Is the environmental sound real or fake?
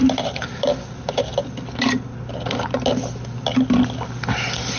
real